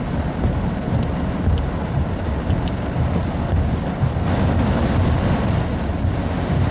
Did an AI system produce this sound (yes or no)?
no